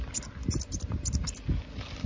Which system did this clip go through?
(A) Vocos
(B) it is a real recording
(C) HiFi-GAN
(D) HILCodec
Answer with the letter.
B